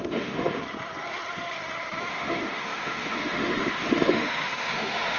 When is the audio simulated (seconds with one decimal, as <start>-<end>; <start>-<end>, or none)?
0.0-0.6; 2.1-5.2